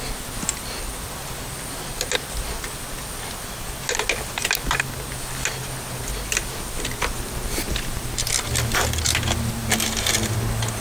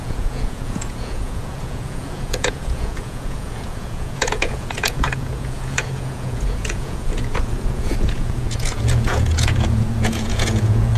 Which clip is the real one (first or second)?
first